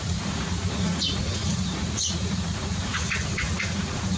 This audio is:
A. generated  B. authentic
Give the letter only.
A